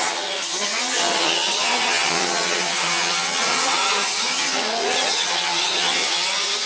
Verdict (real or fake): fake